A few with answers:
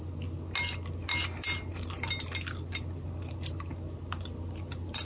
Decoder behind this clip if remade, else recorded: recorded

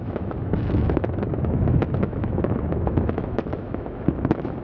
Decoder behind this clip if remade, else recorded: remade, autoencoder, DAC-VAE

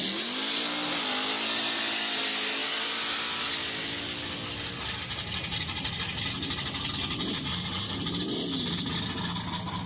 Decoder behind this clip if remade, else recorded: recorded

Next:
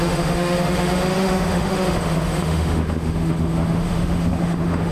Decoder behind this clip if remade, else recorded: remade, autoencoder, DAC-VAE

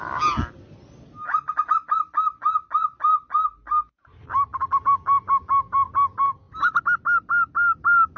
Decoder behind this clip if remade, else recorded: recorded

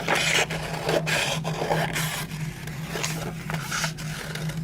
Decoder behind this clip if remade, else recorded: recorded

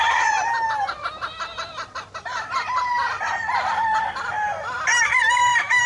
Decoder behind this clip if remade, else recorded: recorded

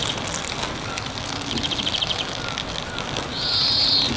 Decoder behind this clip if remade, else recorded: recorded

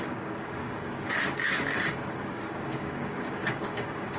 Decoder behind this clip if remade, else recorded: remade, codec, DAC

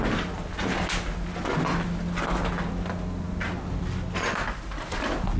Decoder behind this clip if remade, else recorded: recorded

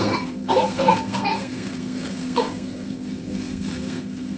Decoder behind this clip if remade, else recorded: remade, codec, SNAC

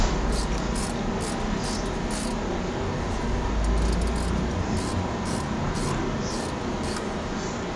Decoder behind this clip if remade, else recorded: recorded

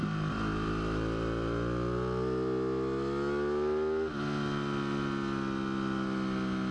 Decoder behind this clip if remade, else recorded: recorded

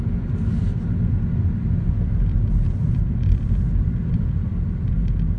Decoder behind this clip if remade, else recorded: remade, vocoder, BigVGAN v2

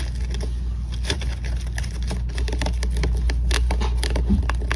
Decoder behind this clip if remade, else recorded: recorded